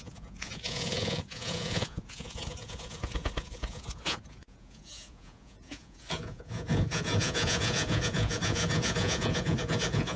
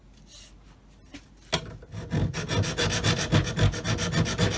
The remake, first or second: first